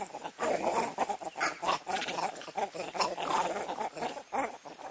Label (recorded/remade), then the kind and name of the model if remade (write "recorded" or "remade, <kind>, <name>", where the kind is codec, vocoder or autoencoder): recorded